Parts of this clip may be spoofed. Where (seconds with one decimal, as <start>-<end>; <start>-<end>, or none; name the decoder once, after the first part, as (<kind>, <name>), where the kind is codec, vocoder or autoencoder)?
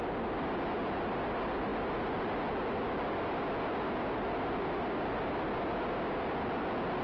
none